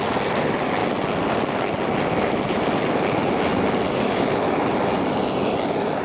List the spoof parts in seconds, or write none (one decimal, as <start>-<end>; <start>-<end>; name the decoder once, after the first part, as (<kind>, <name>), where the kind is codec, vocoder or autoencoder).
none